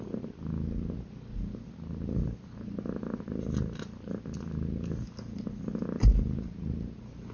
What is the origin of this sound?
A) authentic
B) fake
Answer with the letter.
A